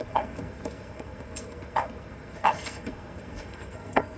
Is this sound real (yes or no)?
no